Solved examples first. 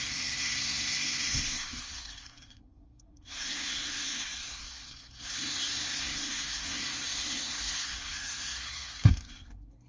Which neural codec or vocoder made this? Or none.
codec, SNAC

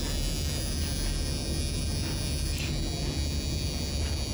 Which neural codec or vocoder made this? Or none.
none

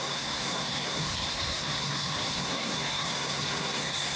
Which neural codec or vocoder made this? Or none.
codec, SNAC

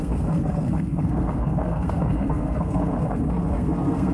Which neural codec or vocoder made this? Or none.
codec, SNAC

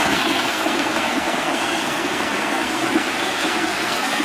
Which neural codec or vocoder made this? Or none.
codec, SNAC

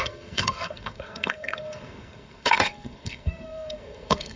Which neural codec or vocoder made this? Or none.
codec, SNAC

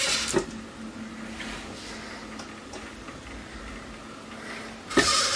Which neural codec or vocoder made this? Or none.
none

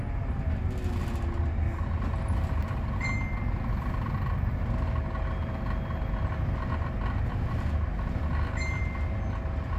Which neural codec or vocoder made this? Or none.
none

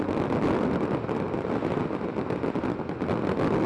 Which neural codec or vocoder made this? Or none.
none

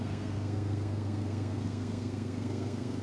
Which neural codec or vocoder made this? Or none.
codec, SNAC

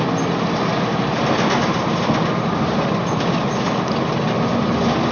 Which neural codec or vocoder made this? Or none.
none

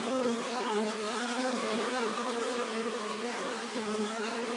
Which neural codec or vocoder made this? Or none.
codec, SNAC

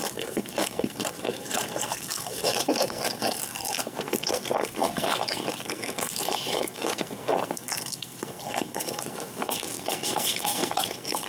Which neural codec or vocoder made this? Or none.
codec, SNAC